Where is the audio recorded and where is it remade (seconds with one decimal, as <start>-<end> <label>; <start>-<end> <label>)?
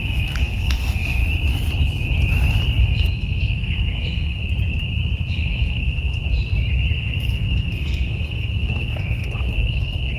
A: 0.0-1.2 remade; 1.2-2.8 recorded; 2.8-4.4 remade; 4.4-5.3 recorded; 5.3-6.2 remade; 6.2-7.0 recorded; 7.0-10.2 remade